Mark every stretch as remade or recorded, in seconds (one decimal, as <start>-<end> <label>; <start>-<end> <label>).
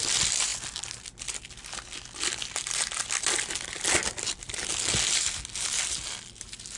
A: 0.0-6.8 recorded